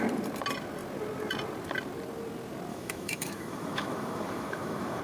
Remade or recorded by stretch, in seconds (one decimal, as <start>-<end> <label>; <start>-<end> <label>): 0.0-2.7 recorded; 2.7-5.0 remade